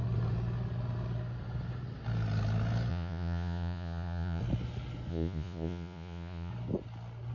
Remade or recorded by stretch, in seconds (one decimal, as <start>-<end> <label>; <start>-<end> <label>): 0.0-2.9 recorded; 2.9-4.4 remade; 4.4-5.1 recorded; 5.1-6.5 remade; 6.5-7.3 recorded